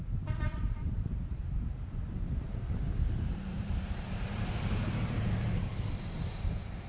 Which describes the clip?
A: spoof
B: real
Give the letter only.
A